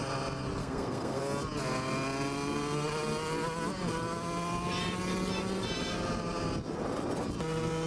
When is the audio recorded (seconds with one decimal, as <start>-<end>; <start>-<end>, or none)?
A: 0.0-0.6; 1.2-7.9